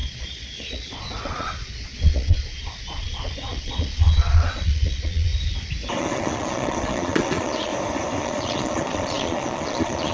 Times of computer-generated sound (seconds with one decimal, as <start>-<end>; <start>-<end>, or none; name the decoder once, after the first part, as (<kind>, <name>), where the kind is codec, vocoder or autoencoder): 0.0-5.3 (vocoder, Vocos); 6.0-7.7; 8.2-10.1